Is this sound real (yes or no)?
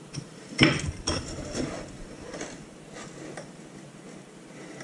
no